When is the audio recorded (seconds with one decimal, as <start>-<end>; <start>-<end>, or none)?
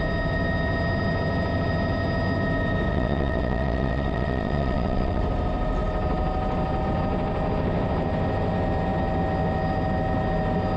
0.0-2.9; 5.2-10.8